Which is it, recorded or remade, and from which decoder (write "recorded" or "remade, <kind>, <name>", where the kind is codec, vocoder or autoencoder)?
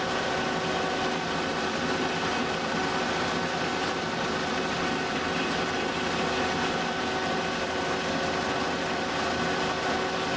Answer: recorded